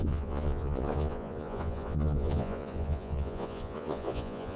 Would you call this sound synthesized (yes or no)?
yes